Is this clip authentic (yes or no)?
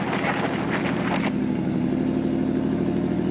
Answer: yes